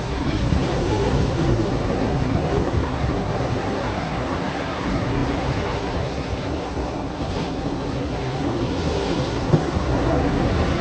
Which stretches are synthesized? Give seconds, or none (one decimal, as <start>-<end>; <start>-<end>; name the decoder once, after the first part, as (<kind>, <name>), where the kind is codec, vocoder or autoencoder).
0.0-10.8 (codec, SNAC)